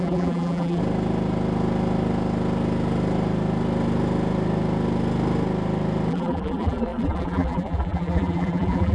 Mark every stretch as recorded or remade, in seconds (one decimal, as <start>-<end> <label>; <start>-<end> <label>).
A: 0.0-0.8 remade; 0.8-6.1 recorded; 6.1-8.9 remade